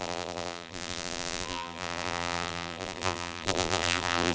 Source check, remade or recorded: remade